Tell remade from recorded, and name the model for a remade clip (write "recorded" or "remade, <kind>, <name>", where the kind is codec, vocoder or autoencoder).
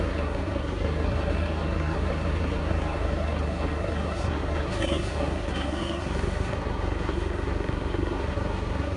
remade, codec, SNAC